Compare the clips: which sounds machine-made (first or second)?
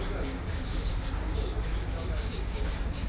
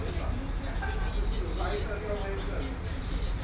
first